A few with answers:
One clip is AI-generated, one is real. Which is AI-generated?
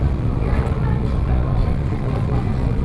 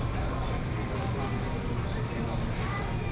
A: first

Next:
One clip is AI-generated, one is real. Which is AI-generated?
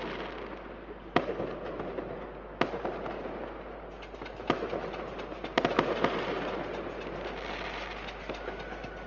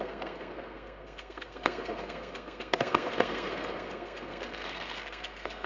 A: second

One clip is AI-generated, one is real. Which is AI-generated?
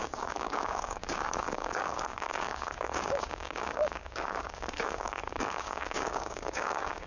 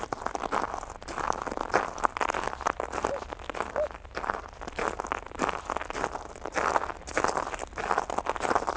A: first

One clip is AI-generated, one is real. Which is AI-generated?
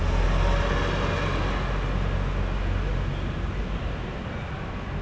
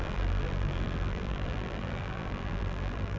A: second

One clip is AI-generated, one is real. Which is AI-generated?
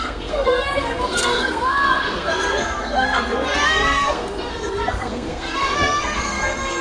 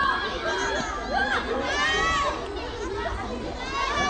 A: first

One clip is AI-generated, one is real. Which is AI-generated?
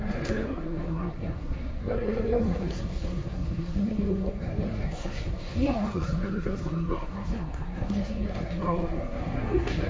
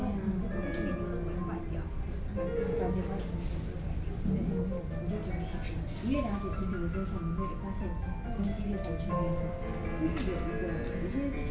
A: first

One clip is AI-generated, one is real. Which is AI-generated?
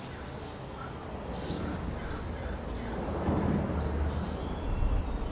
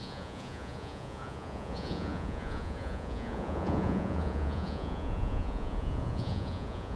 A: second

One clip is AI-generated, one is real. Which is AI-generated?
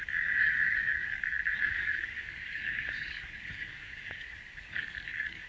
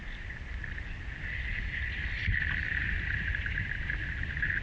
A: first